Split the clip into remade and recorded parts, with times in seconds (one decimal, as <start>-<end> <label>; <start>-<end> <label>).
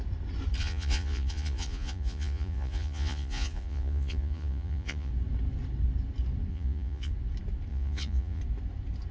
0.0-0.6 recorded; 0.6-5.1 remade; 5.1-6.5 recorded; 6.5-7.1 remade; 7.1-7.7 recorded; 7.7-8.4 remade; 8.4-9.1 recorded